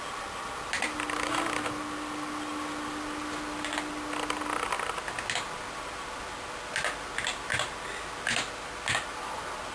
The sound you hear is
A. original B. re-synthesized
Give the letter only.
A